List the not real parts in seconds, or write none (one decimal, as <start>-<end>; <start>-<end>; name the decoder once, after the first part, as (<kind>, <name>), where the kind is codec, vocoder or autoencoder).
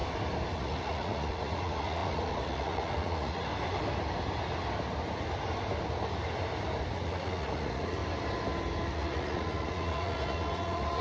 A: 0.5-3.5 (vocoder, Vocos); 6.9-8.0; 8.9-11.0